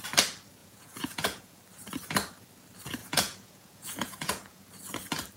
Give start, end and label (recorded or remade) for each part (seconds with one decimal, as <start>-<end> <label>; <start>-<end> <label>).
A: 0.0-0.6 recorded; 0.6-1.6 remade; 1.6-3.0 recorded; 3.0-4.7 remade; 4.7-5.4 recorded